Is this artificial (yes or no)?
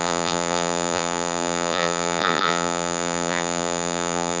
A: yes